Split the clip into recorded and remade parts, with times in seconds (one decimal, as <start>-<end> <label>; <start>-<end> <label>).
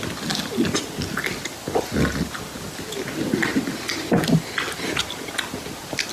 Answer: 0.0-6.1 recorded